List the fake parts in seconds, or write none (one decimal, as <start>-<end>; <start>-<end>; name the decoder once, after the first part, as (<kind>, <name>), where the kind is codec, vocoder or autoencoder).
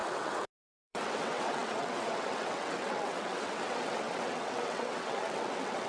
0.0-5.9 (vocoder, WaveNeXt)